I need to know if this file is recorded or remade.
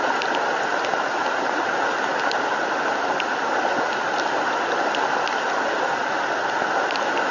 recorded